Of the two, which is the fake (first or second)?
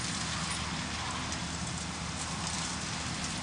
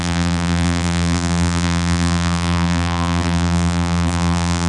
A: second